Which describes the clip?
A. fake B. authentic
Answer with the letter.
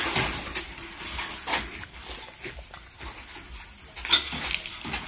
B